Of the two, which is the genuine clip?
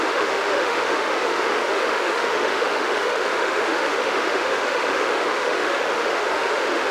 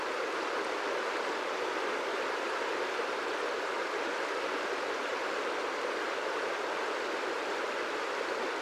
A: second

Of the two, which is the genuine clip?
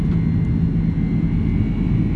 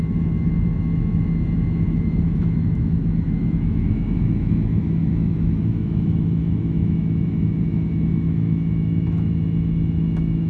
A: first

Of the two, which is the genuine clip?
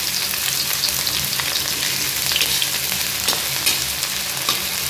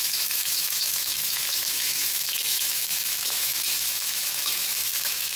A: first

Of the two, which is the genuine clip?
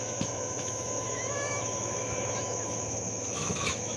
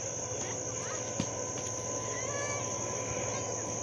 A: second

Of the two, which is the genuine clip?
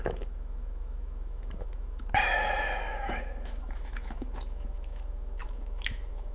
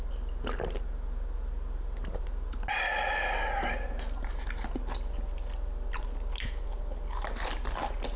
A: second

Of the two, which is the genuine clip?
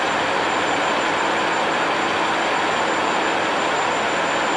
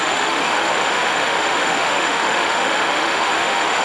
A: first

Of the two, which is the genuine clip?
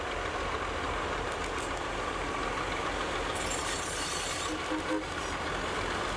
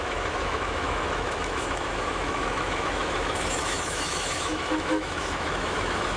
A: first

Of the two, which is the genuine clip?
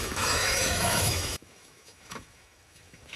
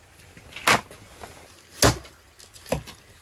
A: second